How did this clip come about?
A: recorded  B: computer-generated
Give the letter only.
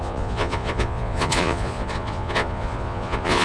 B